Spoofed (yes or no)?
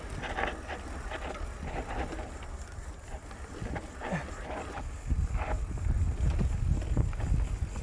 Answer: no